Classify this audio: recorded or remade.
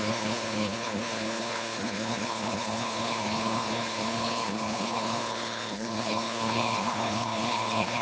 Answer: remade